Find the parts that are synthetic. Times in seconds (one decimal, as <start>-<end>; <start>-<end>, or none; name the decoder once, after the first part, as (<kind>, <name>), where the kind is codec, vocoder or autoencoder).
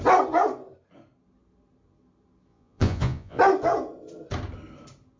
2.5-3.4 (vocoder, Vocos)